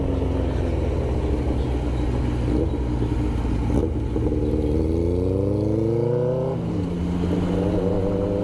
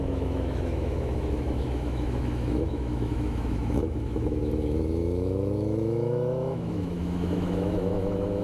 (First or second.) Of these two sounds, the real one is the first